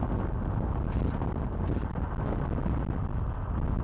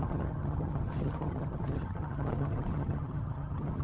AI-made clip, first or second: second